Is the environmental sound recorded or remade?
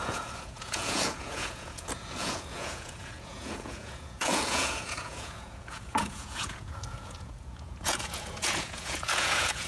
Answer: remade